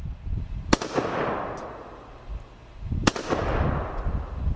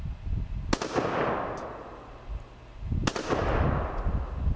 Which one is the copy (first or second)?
first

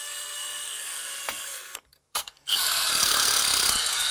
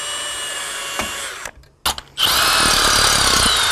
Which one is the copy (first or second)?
first